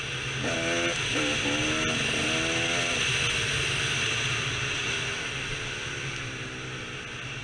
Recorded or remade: recorded